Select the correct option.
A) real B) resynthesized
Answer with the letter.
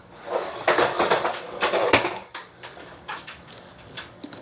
B